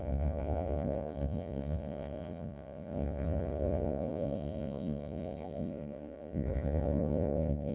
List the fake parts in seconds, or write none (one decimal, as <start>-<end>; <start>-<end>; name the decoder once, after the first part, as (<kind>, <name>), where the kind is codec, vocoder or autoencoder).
0.0-7.7 (vocoder, Vocos)